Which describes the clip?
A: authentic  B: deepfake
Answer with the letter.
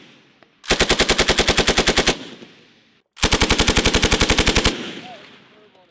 A